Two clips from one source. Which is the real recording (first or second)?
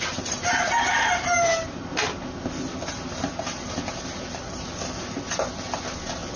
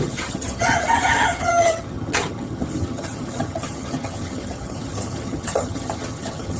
first